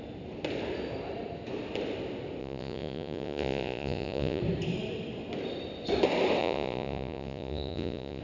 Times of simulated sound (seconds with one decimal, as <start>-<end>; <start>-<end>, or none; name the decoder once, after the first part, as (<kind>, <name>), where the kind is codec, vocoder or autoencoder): 2.4-4.4 (vocoder, Vocos); 6.4-8.2